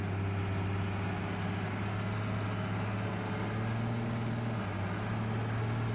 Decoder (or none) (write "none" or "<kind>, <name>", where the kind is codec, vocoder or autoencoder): none